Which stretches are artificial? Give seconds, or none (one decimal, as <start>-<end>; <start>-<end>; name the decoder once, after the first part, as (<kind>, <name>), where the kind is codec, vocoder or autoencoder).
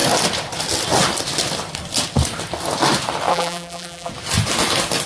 3.3-4.1 (vocoder, BigVGAN v2)